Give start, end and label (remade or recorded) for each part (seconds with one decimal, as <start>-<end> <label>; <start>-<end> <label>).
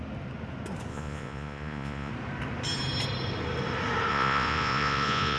0.0-0.9 recorded; 0.9-2.1 remade; 2.1-4.1 recorded; 4.1-5.4 remade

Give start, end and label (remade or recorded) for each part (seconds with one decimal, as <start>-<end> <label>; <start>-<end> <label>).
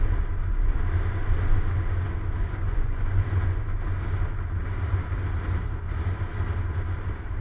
0.0-2.4 recorded; 2.4-3.6 remade; 3.6-7.4 recorded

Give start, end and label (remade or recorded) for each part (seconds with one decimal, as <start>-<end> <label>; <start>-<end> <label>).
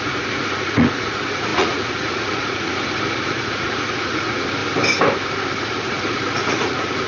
0.0-4.6 remade; 4.6-5.6 recorded; 5.6-7.1 remade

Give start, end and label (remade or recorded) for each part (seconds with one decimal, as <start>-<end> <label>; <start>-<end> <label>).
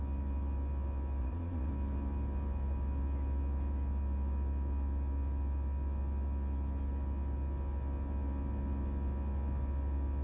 0.0-1.2 recorded; 1.2-1.7 remade; 1.7-10.2 recorded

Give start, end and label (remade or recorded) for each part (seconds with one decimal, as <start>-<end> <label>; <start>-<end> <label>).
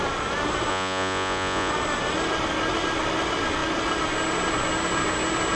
0.0-0.7 recorded; 0.7-1.7 remade; 1.7-5.6 recorded